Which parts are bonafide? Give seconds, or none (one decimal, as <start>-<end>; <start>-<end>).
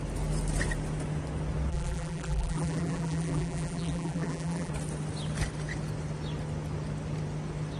0.0-1.7; 4.7-7.8